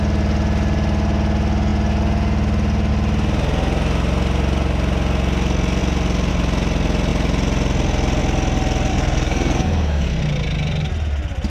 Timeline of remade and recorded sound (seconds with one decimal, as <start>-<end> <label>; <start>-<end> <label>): 0.0-8.9 recorded; 8.9-10.2 remade; 10.2-11.5 recorded